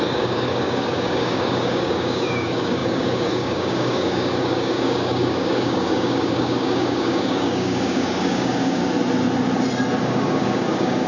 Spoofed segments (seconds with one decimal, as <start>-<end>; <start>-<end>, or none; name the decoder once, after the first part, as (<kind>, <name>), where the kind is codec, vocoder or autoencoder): 0.0-8.8 (codec, DAC); 10.0-11.1